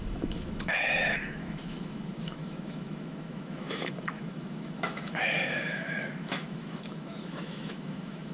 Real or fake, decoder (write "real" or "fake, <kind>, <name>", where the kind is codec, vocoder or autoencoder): fake, autoencoder, DAC-VAE